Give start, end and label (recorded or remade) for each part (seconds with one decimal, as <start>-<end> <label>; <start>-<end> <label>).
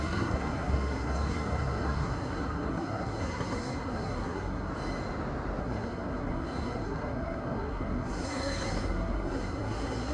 0.0-4.7 remade; 4.7-5.6 recorded; 5.6-10.1 remade